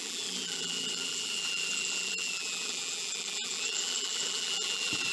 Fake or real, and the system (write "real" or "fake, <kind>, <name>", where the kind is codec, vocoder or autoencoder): fake, vocoder, BigVGAN v2